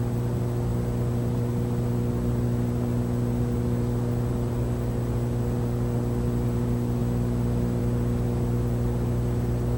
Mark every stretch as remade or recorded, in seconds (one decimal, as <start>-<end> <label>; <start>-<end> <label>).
0.0-9.8 recorded

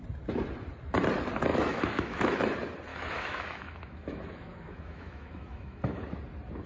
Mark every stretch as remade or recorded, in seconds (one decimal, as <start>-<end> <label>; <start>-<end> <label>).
0.0-1.5 recorded; 1.5-2.4 remade; 2.4-2.9 recorded; 2.9-6.0 remade; 6.0-6.7 recorded

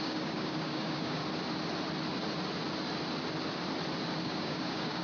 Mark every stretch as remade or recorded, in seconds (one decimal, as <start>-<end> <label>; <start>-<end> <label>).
0.0-1.2 remade; 1.2-4.2 recorded; 4.2-5.0 remade

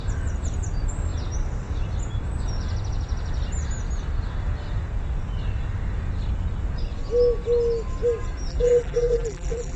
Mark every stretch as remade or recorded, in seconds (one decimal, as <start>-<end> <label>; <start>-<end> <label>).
0.0-8.5 recorded; 8.5-9.8 remade

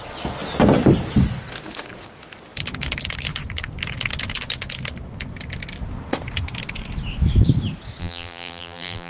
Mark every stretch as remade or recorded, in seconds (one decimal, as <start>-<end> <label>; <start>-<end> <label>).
0.0-8.0 recorded; 8.0-9.1 remade

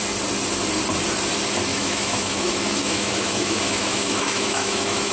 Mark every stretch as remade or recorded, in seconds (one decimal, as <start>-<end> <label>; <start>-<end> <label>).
0.0-1.7 recorded; 1.7-5.1 remade

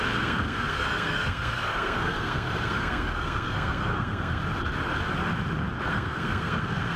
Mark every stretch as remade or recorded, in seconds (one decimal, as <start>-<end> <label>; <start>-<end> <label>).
0.0-4.4 remade; 4.4-5.9 recorded; 5.9-7.0 remade